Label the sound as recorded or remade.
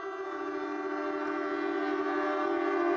recorded